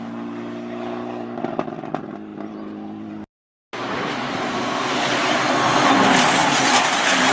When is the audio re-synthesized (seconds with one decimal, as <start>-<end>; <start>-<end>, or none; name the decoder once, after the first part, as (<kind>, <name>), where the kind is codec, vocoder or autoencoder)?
none